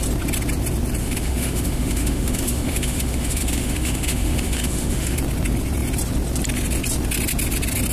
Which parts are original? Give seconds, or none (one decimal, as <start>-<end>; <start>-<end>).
0.0-1.0; 5.2-7.9